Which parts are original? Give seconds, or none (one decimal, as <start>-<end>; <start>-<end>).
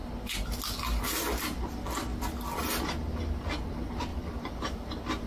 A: 0.0-2.1; 3.2-4.1